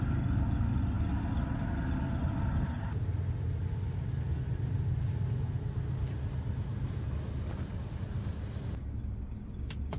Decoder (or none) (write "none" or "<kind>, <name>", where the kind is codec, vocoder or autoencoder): none